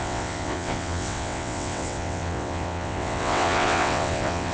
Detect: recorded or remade remade